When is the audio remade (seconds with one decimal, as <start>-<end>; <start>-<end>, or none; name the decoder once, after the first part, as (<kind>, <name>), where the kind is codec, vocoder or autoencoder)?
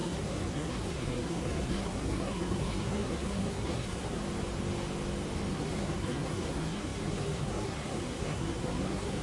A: 0.0-4.2 (codec, SNAC); 5.5-9.2